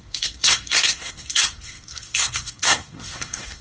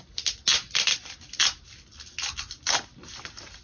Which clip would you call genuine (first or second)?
second